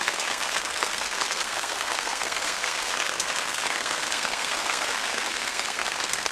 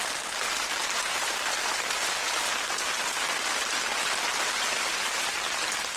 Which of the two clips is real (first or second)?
second